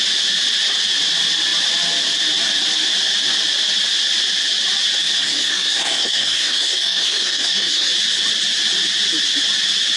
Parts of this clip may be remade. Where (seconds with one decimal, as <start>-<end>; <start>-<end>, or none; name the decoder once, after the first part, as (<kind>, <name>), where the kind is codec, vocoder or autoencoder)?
5.0-7.9 (codec, SNAC)